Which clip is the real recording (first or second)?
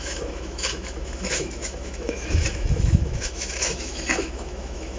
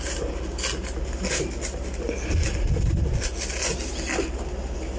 second